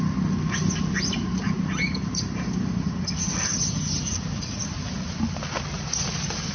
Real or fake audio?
real